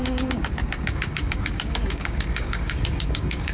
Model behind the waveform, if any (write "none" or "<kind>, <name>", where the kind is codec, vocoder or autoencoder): codec, DAC